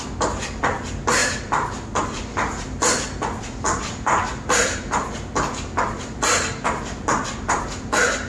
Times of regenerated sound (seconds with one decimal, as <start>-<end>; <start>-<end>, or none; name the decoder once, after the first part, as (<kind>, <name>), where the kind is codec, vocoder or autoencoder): none